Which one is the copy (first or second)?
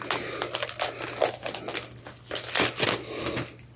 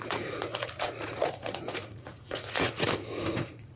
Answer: second